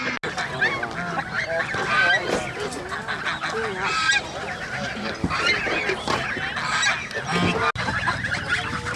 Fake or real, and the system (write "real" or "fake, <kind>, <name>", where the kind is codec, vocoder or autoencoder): real